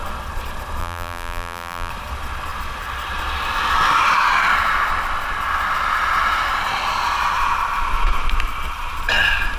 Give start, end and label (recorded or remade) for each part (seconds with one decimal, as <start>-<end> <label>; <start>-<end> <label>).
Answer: 0.0-0.8 recorded; 0.8-1.9 remade; 1.9-9.6 recorded